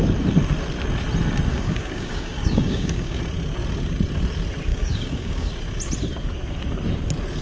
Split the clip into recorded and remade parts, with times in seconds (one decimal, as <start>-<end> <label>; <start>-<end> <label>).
0.0-1.5 recorded; 1.5-3.2 remade; 3.2-4.7 recorded; 4.7-5.5 remade; 5.5-7.4 recorded